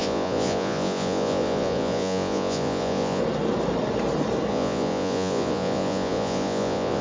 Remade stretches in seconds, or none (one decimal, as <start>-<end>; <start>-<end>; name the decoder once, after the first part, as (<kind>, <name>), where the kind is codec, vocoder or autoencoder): 0.0-3.2 (vocoder, Vocos); 4.5-7.0